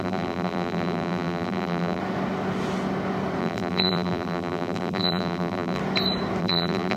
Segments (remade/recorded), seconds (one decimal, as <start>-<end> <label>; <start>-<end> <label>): 0.0-2.0 remade; 2.0-3.4 recorded; 3.4-5.8 remade; 5.8-6.4 recorded; 6.4-7.0 remade